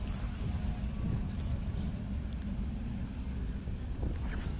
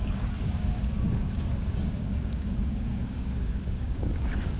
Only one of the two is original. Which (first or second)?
first